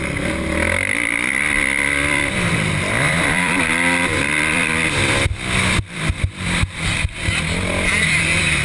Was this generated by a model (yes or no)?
yes